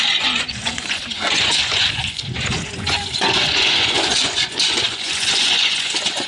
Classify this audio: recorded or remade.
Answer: remade